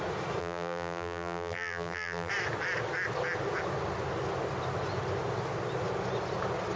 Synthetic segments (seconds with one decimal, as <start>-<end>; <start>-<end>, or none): 0.4-2.3